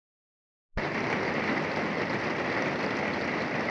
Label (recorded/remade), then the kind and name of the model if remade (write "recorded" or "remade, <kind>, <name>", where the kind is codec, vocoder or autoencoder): recorded